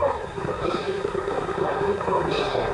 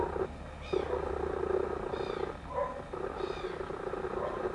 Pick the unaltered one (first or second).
second